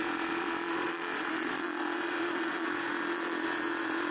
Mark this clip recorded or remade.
remade